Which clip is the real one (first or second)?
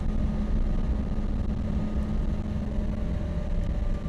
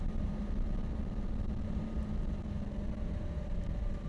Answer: first